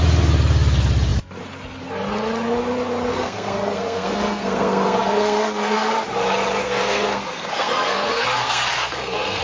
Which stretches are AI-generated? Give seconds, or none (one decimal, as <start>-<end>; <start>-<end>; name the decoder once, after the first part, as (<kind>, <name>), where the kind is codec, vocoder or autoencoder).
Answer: 3.1-5.9 (codec, SNAC); 6.6-9.4